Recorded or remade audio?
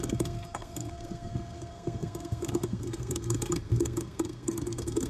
remade